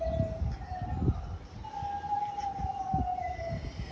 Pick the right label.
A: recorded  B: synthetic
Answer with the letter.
A